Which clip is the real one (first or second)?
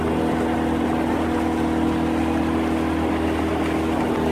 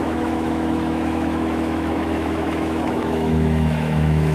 first